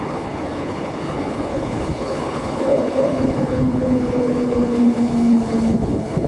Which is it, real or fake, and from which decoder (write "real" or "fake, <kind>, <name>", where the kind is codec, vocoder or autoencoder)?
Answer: fake, codec, HILCodec